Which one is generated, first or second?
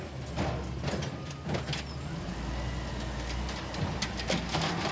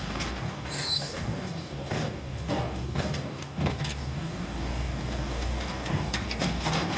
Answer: second